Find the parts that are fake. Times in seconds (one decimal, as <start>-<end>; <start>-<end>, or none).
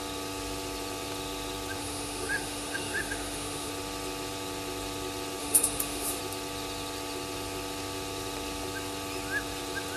1.8-3.7; 5.4-6.2